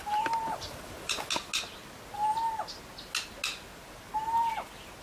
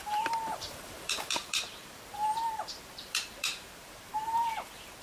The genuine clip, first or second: first